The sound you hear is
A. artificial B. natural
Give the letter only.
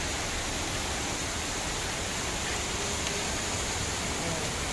B